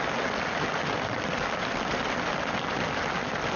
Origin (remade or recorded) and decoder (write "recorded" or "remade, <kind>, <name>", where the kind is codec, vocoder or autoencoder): recorded